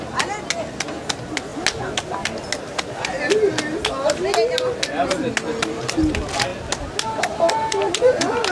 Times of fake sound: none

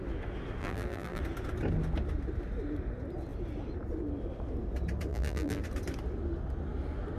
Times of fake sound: 0.6-1.2 (vocoder, BigVGAN v2); 5.1-5.6

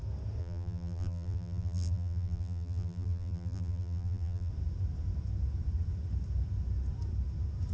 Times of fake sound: 0.4-4.5 (vocoder, BigVGAN v2)

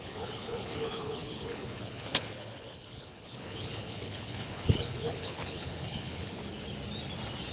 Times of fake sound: 0.0-6.4 (codec, HILCodec)

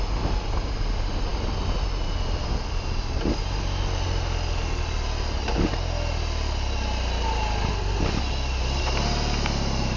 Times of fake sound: none

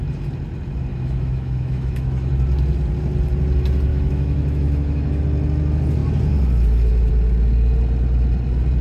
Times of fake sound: 0.9-2.3 (autoencoder, DAC-VAE); 3.9-5.2

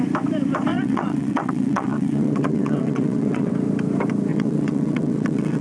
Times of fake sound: 0.7-3.5 (vocoder, WaveNeXt); 4.3-5.6